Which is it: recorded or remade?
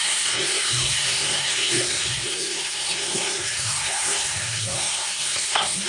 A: remade